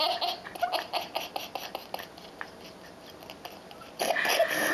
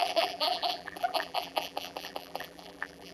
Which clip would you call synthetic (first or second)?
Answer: second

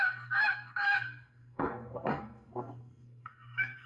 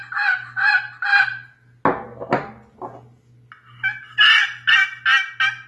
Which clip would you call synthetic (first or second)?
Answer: first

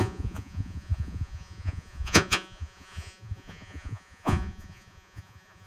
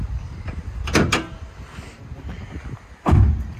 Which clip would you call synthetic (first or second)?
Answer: first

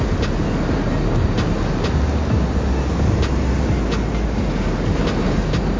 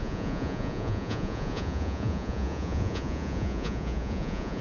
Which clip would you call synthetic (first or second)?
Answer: second